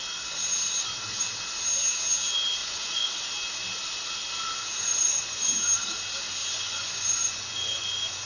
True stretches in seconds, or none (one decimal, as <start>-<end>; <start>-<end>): 0.0-2.6; 3.1-4.8; 5.5-6.4